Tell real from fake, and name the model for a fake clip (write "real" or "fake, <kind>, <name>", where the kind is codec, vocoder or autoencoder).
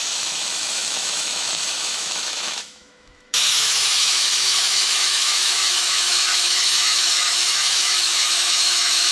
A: fake, autoencoder, DAC-VAE